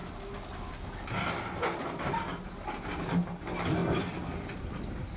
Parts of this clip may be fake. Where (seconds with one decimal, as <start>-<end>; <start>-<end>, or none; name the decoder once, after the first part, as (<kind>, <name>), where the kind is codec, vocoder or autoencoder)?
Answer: none